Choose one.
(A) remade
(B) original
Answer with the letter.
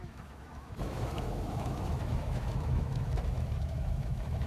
A